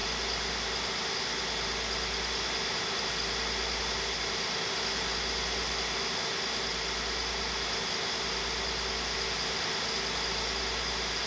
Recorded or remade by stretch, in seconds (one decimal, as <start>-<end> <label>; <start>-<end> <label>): 0.0-11.3 recorded

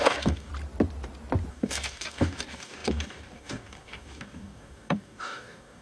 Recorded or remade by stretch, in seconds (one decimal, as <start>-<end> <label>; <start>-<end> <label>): 0.0-0.5 remade; 0.5-1.5 recorded; 1.5-5.8 remade

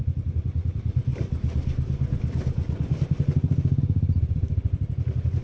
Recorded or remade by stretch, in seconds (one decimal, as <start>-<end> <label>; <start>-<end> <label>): 0.0-5.4 recorded